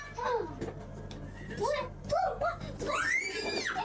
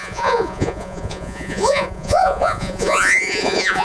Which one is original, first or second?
first